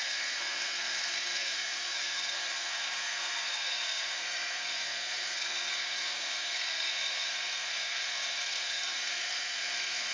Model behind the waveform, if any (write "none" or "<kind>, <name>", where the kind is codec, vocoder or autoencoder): codec, SNAC